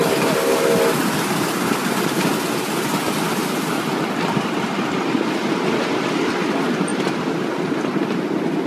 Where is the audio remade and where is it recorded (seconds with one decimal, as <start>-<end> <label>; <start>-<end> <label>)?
0.0-8.7 recorded